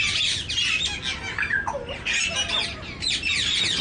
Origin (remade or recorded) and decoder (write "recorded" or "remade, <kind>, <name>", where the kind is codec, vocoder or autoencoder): recorded